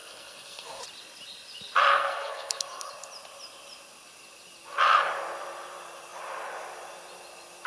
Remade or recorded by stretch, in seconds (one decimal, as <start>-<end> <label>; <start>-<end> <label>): 0.0-0.8 remade; 0.8-1.9 recorded; 1.9-2.9 remade; 2.9-7.7 recorded